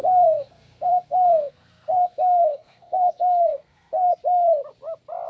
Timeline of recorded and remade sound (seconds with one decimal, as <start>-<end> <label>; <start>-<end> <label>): 0.0-4.1 remade; 4.1-5.3 recorded